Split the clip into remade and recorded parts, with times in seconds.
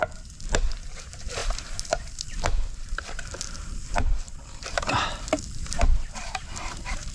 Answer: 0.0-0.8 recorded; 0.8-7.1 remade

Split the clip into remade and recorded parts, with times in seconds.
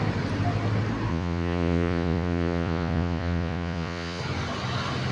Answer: 0.0-1.1 recorded; 1.1-4.2 remade; 4.2-5.1 recorded